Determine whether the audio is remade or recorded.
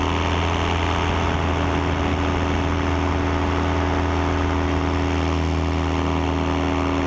recorded